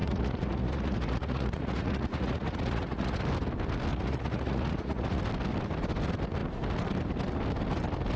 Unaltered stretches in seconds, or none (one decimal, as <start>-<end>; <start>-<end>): 3.2-3.9; 5.2-8.2